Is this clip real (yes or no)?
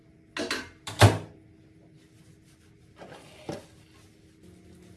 yes